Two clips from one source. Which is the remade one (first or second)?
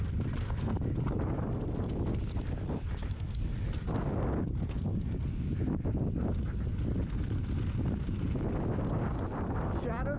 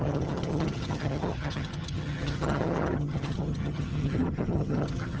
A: second